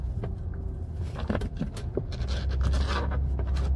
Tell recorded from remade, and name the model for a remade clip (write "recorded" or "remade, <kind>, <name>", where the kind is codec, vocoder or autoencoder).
recorded